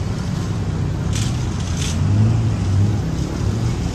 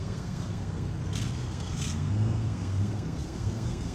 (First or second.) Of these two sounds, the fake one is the second